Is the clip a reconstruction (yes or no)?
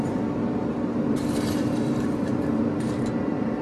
yes